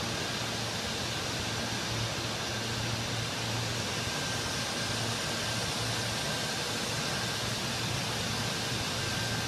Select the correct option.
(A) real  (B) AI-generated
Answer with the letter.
A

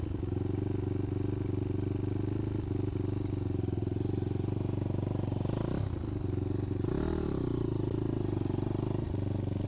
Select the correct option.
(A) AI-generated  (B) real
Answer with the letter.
B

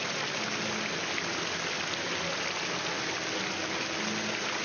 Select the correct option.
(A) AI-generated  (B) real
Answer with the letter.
B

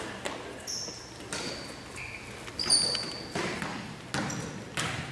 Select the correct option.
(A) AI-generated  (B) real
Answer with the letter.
B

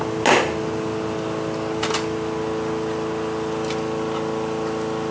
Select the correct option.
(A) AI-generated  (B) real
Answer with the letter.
B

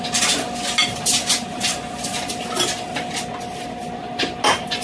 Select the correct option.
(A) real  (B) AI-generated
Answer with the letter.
A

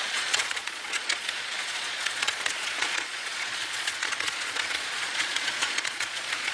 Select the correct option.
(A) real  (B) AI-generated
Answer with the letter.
B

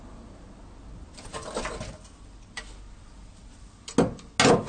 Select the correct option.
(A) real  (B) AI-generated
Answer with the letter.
A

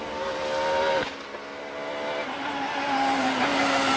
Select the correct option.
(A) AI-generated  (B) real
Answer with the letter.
B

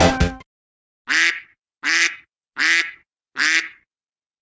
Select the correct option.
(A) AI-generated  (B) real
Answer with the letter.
B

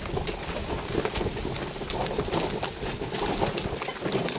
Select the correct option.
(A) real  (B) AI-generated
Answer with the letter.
A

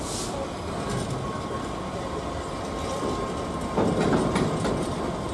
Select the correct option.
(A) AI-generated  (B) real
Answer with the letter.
B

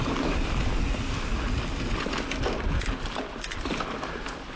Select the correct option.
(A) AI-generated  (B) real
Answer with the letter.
B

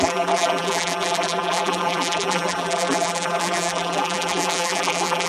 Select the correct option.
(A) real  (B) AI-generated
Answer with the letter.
B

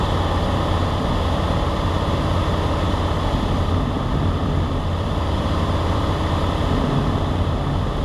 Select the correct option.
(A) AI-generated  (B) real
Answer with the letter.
B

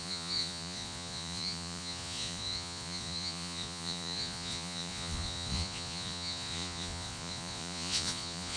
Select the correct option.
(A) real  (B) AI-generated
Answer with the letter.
B